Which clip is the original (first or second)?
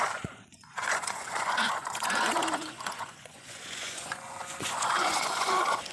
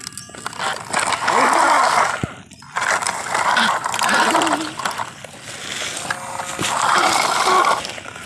second